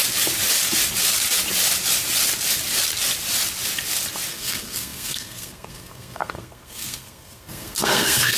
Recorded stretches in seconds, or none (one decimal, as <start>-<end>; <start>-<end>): 0.0-4.3